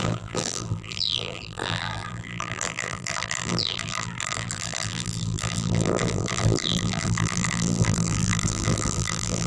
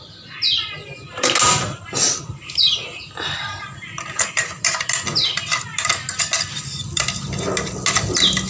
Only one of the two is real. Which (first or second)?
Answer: second